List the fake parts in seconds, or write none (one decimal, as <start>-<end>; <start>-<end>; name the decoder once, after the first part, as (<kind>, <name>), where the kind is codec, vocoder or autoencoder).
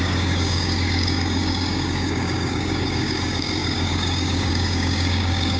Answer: 0.0-5.6 (codec, DAC)